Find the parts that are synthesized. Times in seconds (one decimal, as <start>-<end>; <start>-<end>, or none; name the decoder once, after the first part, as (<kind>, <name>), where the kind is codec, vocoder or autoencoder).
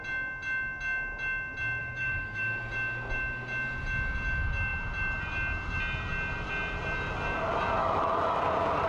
1.8-2.6 (autoencoder, DAC-VAE); 7.8-8.4